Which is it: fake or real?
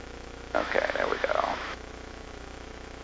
fake